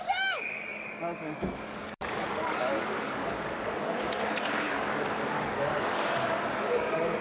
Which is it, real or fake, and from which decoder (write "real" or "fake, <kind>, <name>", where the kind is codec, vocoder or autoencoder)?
fake, codec, DAC